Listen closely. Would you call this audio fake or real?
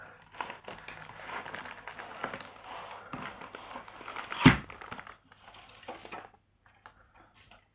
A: real